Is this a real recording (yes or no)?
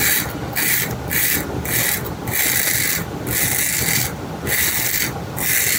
yes